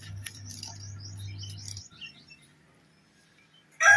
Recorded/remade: remade